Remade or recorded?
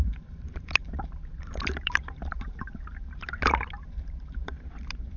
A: remade